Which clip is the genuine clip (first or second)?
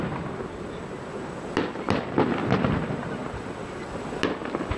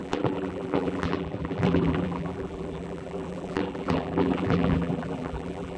first